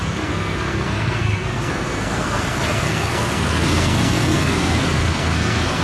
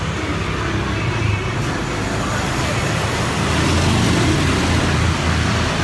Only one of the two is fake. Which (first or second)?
first